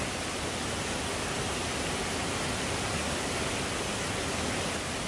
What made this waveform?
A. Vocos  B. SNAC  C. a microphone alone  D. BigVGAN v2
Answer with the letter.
C